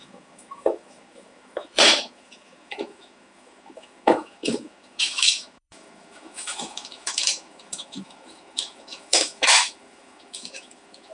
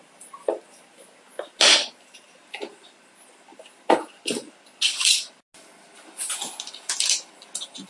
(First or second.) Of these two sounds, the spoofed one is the first